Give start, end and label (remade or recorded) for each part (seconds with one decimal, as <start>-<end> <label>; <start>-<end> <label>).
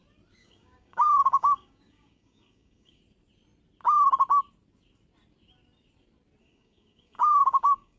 0.0-0.4 recorded; 0.4-3.0 remade; 3.0-6.4 recorded; 6.4-8.0 remade